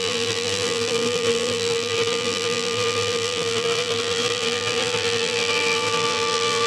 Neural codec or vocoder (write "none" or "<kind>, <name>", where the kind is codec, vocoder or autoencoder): vocoder, BigVGAN v2